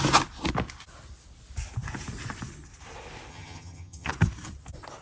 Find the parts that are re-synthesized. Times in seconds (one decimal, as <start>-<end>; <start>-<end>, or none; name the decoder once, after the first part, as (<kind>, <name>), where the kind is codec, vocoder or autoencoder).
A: 3.3-4.1 (vocoder, HiFi-GAN)